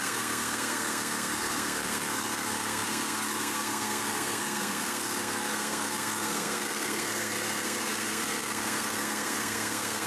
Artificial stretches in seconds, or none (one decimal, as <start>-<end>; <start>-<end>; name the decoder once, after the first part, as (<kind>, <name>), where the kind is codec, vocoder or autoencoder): 0.0-10.1 (codec, SNAC)